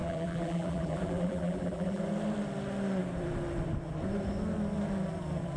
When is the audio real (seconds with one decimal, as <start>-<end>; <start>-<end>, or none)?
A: 2.0-5.6